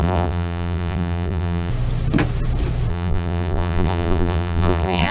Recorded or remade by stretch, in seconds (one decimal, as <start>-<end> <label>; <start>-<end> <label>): 0.0-1.7 remade; 1.7-2.9 recorded; 2.9-5.1 remade